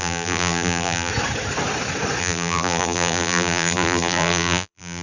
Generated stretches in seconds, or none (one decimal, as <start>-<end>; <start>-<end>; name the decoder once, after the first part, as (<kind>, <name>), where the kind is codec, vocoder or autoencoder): 0.0-1.1 (vocoder, BigVGAN v2); 2.2-5.0